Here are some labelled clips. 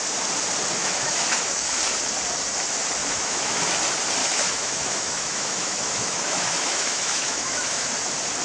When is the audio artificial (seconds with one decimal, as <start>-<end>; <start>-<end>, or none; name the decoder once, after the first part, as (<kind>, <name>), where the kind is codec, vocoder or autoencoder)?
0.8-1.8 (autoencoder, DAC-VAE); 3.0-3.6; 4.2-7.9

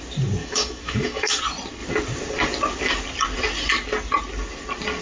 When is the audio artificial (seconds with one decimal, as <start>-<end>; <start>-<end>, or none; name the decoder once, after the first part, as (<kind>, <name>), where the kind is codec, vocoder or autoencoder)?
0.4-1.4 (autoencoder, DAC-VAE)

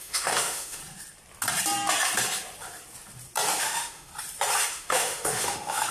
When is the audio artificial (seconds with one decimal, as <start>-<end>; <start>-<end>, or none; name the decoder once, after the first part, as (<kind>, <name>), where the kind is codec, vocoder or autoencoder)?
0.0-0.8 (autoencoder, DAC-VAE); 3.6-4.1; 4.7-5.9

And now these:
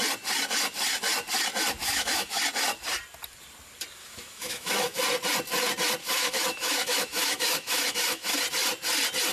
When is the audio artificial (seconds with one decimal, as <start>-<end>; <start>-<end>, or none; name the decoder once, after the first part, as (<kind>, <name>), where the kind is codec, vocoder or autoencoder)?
1.8-2.4 (autoencoder, DAC-VAE); 4.0-5.0; 6.0-8.3

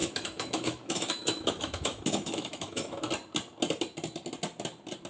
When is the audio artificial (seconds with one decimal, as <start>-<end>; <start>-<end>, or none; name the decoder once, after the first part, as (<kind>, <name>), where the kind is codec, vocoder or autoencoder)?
0.0-3.1 (autoencoder, DAC-VAE)